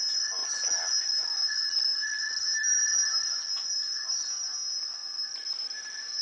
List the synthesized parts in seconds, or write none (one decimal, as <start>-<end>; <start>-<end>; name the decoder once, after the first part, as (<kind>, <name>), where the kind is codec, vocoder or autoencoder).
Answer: none